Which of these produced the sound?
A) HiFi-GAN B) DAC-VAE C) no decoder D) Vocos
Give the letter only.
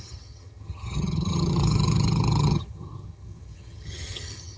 A